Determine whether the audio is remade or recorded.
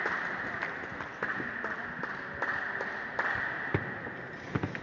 recorded